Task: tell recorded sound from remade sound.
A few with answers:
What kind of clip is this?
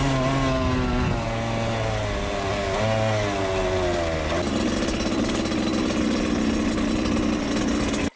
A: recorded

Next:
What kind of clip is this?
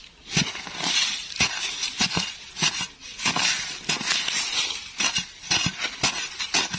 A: recorded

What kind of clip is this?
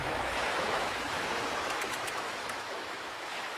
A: remade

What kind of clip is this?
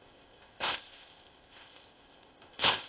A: remade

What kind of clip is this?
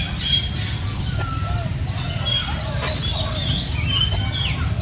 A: recorded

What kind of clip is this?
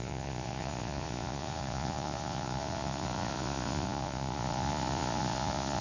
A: remade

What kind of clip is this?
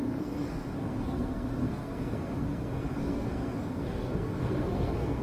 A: remade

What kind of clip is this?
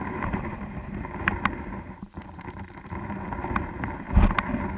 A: remade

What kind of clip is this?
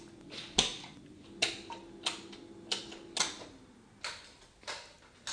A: recorded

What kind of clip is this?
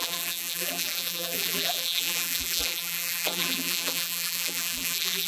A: remade